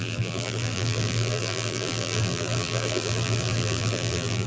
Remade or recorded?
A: remade